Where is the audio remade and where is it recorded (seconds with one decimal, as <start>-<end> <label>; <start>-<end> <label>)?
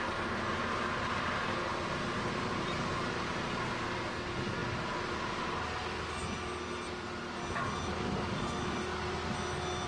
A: 0.0-1.7 recorded; 1.7-3.1 remade; 3.1-9.9 recorded